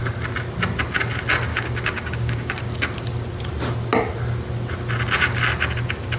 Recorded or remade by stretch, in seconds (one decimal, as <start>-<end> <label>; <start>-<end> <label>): 0.0-1.5 recorded; 1.5-2.6 remade; 2.6-6.2 recorded